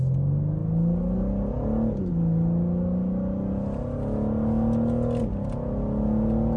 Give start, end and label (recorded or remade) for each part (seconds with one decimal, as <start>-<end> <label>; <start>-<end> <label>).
0.0-6.6 recorded